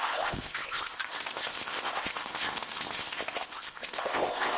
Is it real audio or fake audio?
fake